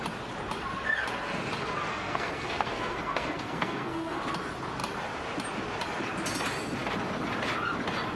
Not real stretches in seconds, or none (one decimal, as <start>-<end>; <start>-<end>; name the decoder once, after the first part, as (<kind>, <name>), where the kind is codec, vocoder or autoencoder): 1.9-4.2 (codec, SNAC)